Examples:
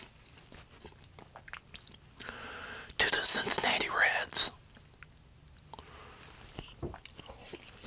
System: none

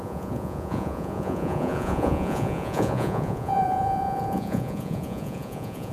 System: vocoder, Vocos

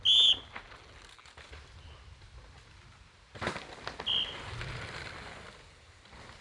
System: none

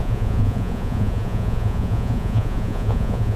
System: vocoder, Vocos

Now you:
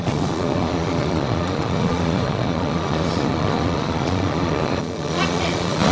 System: vocoder, Vocos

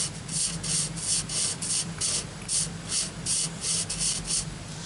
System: none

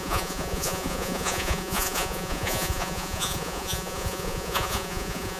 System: vocoder, Vocos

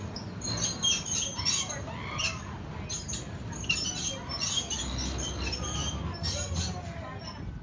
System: none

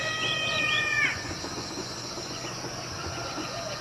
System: vocoder, Vocos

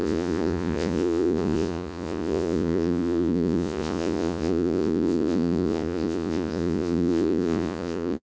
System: vocoder, Vocos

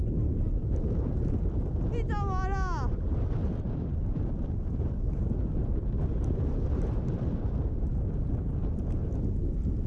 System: none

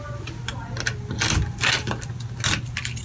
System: none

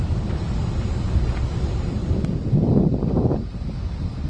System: none